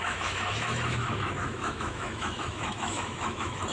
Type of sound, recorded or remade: remade